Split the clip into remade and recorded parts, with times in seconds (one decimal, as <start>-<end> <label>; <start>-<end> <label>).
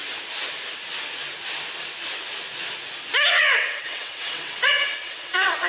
0.0-3.4 recorded; 3.4-5.7 remade